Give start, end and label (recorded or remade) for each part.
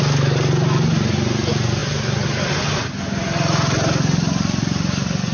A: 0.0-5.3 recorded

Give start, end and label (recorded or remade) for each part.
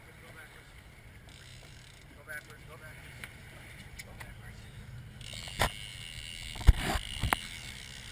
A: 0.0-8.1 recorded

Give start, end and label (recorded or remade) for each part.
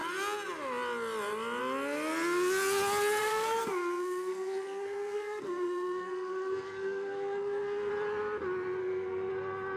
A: 0.0-3.2 recorded; 3.2-7.9 remade; 7.9-8.8 recorded; 8.8-9.3 remade; 9.3-9.8 recorded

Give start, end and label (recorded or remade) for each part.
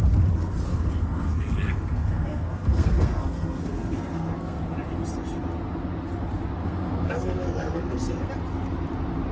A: 0.0-0.7 recorded; 0.7-4.6 remade; 4.6-6.6 recorded; 6.6-8.3 remade; 8.3-9.3 recorded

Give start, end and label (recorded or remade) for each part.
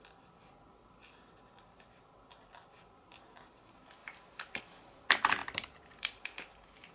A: 0.0-6.9 recorded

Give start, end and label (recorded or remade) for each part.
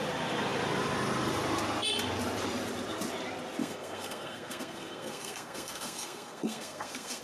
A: 0.0-3.6 recorded; 3.6-7.2 remade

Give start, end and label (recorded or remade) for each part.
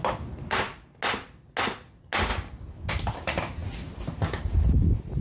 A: 0.0-5.2 recorded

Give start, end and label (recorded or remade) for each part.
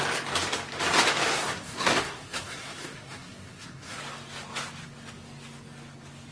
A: 0.0-1.3 recorded; 1.3-4.0 remade; 4.0-6.3 recorded